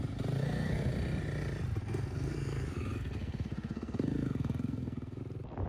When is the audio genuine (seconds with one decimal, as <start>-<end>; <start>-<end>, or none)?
0.0-0.4; 0.9-1.8; 5.2-5.7